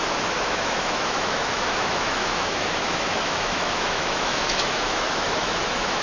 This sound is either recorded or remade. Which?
remade